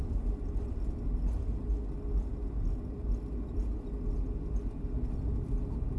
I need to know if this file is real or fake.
real